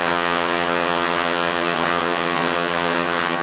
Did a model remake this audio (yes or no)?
yes